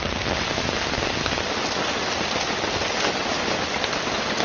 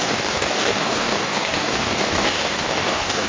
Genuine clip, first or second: first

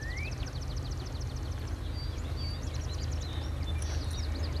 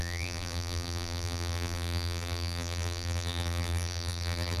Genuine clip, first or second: first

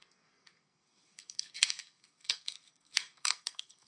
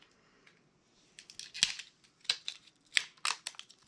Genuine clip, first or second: second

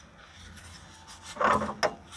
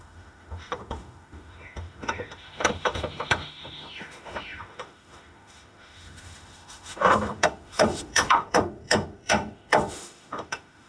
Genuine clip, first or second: first